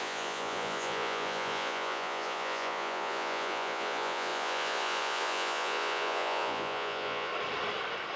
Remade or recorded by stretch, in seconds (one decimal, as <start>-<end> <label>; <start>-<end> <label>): 0.0-7.3 remade; 7.3-8.2 recorded